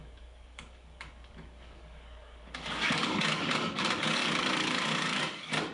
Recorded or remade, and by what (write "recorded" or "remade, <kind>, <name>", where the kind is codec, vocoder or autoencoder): remade, codec, DAC